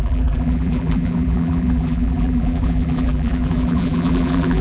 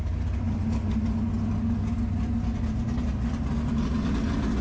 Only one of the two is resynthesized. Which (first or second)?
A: first